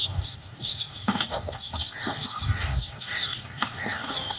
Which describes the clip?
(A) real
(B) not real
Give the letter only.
B